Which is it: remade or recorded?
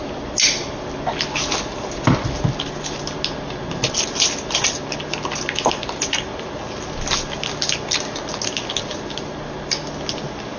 recorded